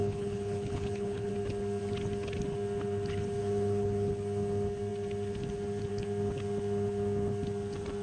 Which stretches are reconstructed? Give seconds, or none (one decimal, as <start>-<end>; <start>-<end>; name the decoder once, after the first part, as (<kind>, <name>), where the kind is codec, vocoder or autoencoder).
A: 0.0-1.3 (codec, HILCodec); 3.4-4.1